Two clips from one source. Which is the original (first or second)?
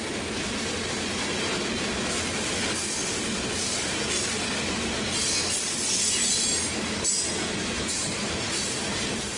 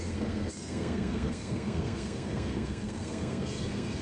first